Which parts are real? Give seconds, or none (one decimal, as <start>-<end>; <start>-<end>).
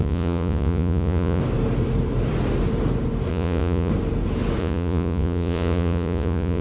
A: 1.4-3.3; 3.9-4.6